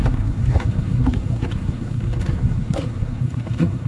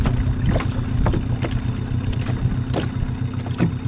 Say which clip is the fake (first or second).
first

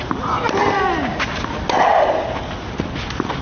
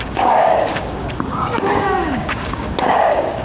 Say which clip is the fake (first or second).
second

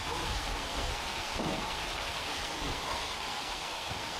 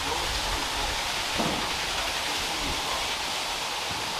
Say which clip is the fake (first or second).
first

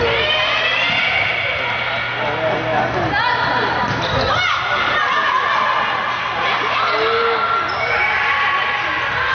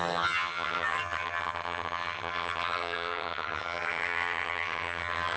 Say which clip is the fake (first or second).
second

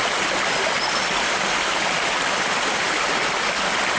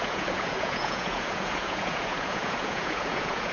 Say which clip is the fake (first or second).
second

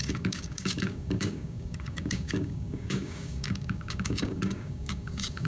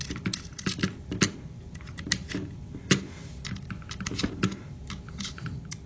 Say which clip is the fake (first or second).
first